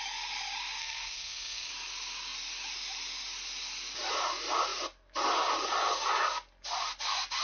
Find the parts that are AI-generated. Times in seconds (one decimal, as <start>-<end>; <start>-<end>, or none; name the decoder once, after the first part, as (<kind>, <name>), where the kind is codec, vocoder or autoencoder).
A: 0.8-1.7 (codec, SNAC)

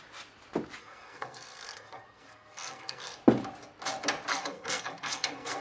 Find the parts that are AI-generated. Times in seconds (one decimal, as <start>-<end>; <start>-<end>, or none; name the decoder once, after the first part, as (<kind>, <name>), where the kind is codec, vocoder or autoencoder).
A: 0.8-3.2 (codec, SNAC); 4.3-5.6

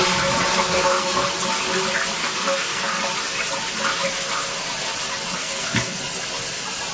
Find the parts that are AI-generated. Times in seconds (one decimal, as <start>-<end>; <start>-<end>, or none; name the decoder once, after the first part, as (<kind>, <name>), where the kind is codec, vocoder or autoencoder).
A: 0.5-1.2 (codec, SNAC); 2.2-3.0; 5.4-6.0

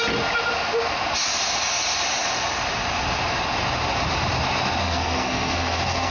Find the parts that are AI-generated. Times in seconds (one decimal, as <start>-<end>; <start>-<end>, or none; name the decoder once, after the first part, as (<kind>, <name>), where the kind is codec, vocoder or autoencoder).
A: 4.8-6.1 (codec, SNAC)

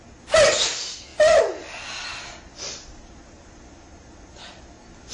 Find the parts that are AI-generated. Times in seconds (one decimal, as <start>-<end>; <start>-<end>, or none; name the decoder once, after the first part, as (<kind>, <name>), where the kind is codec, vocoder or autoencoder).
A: none

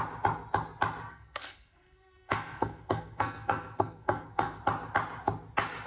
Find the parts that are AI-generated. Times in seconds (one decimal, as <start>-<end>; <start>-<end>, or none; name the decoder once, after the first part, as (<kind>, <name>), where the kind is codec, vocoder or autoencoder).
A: 1.1-4.6 (codec, SNAC)